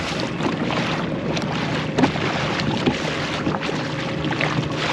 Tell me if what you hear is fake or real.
real